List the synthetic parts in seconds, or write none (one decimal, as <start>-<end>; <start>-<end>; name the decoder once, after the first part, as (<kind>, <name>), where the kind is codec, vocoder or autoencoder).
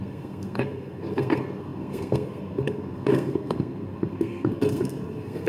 0.0-5.5 (codec, SNAC)